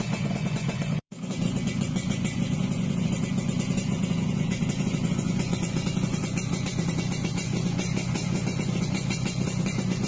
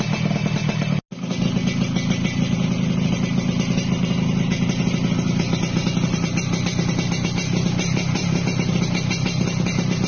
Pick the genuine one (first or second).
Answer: second